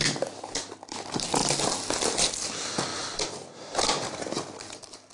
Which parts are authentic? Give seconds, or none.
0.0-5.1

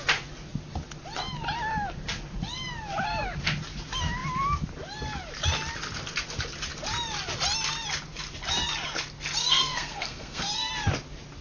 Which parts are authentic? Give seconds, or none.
0.0-9.4; 10.7-11.4

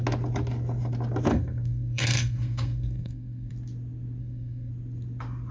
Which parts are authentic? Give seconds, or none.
0.0-1.3; 3.5-4.2; 4.7-5.5

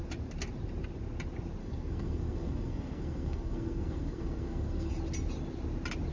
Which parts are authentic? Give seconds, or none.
0.0-1.6; 4.9-6.1

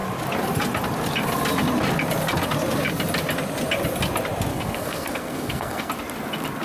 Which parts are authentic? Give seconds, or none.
0.0-4.5; 5.9-6.6

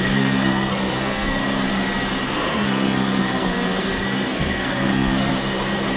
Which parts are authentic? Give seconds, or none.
1.4-2.5; 5.3-6.0

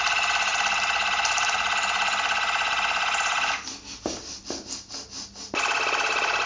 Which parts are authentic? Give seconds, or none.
0.0-6.5